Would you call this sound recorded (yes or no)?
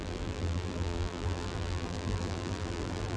no